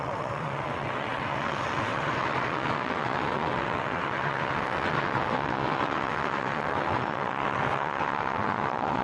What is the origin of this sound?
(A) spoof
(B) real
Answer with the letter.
A